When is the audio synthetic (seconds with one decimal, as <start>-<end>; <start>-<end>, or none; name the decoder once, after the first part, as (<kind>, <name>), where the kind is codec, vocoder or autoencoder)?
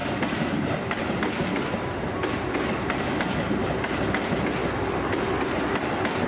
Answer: none